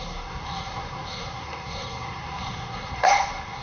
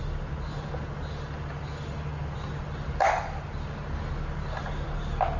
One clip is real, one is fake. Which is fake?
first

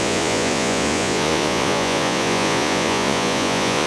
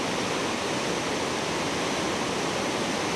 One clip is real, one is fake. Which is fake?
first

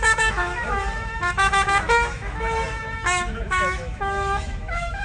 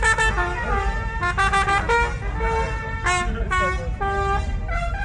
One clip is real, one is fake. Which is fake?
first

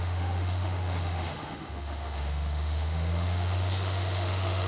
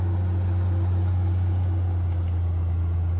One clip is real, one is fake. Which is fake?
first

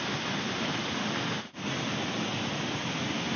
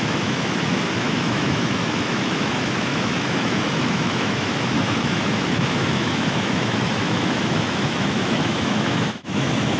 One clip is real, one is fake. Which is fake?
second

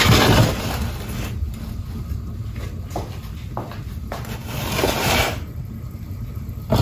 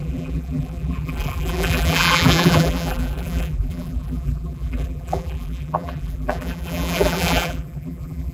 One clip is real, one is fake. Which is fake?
second